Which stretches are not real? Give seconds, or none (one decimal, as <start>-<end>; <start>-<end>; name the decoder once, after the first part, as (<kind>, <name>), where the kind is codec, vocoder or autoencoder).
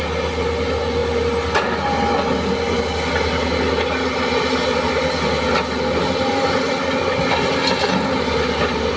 none